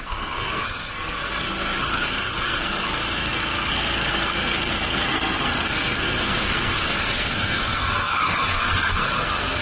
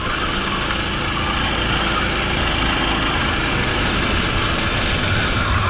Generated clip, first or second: first